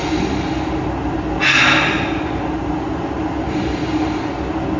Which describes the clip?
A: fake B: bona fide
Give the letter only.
B